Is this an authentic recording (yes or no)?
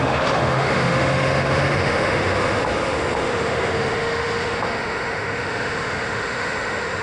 no